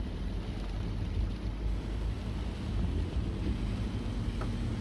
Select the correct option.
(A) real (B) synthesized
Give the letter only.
A